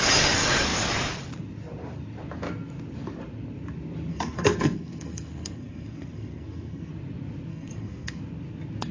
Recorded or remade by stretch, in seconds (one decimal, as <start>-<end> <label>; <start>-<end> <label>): 0.0-4.1 recorded; 4.1-6.9 remade; 6.9-7.5 recorded; 7.5-8.2 remade; 8.2-8.9 recorded